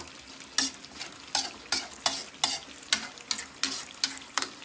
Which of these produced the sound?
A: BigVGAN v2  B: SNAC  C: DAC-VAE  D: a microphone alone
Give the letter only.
D